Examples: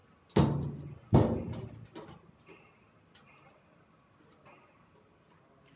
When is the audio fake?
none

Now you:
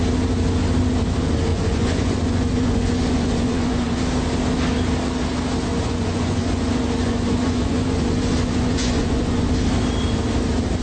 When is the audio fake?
1.5-4.0 (vocoder, Vocos); 5.7-9.5